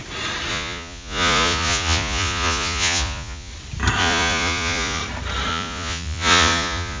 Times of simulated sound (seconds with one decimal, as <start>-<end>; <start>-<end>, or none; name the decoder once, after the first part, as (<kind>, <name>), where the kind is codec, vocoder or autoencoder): 0.5-3.5 (vocoder, Vocos); 4.0-5.0; 5.5-7.0